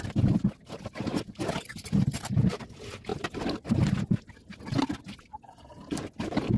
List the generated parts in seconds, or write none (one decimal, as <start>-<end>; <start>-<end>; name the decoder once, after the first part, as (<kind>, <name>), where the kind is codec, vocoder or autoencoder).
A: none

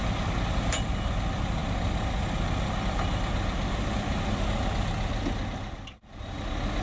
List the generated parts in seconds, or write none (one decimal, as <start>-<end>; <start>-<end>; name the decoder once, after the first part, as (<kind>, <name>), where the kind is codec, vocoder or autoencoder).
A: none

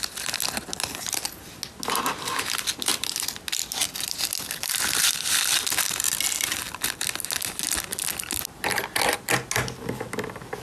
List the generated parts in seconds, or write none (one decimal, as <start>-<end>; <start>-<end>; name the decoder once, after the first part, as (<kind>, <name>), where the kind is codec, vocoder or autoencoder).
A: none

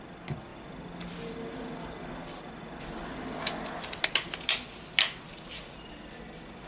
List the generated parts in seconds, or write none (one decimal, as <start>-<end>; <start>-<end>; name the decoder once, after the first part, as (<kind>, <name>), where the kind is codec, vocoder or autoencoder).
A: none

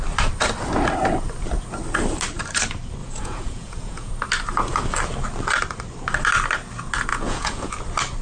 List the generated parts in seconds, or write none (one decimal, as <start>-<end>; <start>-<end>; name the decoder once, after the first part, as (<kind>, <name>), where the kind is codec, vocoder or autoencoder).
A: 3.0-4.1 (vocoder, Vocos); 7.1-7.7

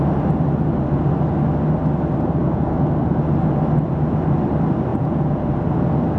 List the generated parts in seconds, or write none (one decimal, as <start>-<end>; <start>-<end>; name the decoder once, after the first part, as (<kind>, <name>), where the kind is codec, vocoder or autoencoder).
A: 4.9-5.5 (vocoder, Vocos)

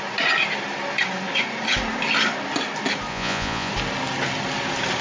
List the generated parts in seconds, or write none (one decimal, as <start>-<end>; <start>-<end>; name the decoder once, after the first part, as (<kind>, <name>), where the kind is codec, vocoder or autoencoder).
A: 3.1-3.7 (vocoder, Vocos)